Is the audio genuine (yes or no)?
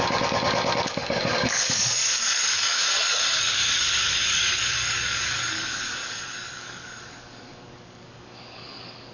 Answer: no